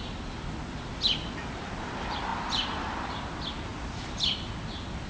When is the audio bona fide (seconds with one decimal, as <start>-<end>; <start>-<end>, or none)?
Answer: 0.0-5.1